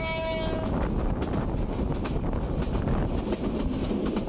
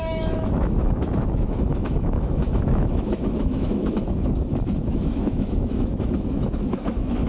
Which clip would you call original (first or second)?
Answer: first